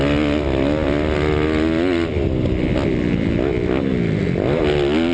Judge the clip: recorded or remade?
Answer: recorded